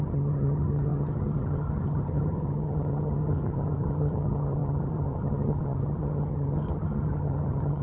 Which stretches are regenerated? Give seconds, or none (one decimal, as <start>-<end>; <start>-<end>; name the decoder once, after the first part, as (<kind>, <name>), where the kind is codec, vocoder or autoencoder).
0.0-7.8 (vocoder, HiFi-GAN)